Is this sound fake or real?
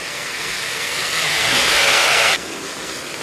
fake